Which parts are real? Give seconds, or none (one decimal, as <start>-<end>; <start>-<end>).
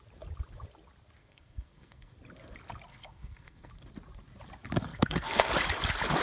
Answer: 0.0-1.2; 2.1-2.9; 3.7-4.9; 5.5-6.2